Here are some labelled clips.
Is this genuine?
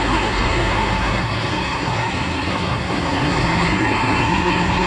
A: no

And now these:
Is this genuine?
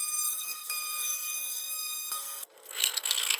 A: no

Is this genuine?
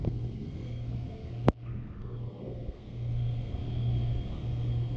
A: no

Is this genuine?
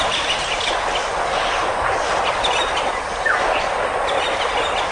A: yes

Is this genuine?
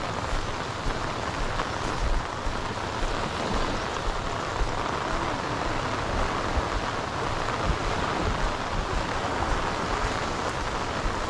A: yes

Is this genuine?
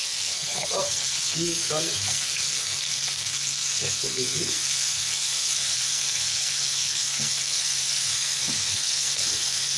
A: no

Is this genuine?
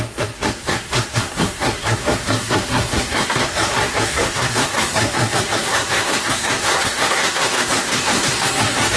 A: no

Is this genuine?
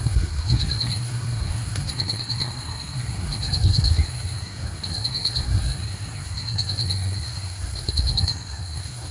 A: no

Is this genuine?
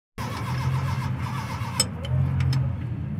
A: yes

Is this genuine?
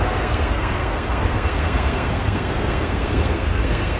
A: no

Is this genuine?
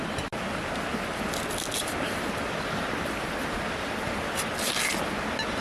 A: yes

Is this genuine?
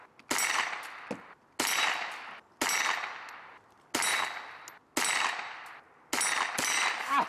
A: yes